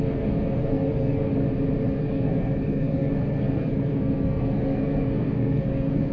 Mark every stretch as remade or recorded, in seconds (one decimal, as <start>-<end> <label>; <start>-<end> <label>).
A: 0.0-1.3 remade; 1.3-2.0 recorded; 2.0-6.1 remade